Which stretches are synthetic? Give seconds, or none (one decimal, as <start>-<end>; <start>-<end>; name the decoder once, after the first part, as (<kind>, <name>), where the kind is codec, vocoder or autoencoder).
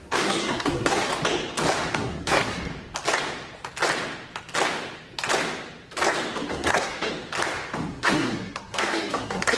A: 0.0-1.1 (codec, SNAC); 1.9-2.7; 6.5-7.1; 7.9-9.6